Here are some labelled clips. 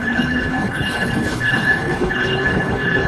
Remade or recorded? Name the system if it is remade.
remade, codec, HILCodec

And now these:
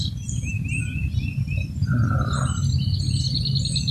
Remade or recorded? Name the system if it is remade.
remade, vocoder, BigVGAN v2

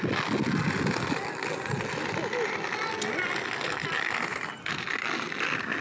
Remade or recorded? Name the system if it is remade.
recorded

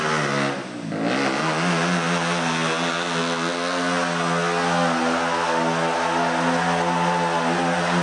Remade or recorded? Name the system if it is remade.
recorded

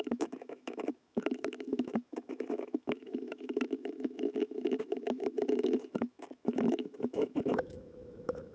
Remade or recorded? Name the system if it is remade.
remade, autoencoder, DAC-VAE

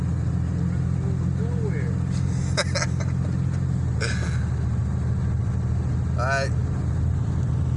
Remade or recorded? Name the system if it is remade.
recorded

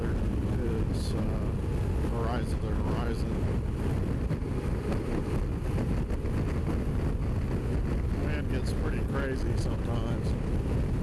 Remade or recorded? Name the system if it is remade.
recorded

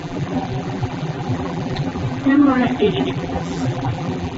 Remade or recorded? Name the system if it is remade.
remade, vocoder, BigVGAN v2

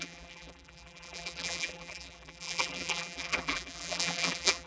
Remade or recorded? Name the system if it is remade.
remade, vocoder, BigVGAN v2